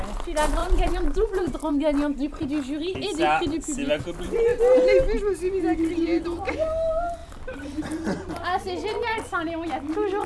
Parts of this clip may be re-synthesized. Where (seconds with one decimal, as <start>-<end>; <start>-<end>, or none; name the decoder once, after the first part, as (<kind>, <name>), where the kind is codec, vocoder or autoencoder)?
0.6-1.7 (vocoder, BigVGAN v2); 7.2-7.8